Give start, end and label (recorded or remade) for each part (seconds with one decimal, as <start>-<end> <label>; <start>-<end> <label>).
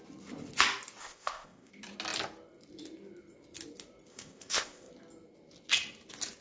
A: 0.0-1.0 recorded; 1.0-1.7 remade; 1.7-4.1 recorded; 4.1-4.9 remade; 4.9-6.4 recorded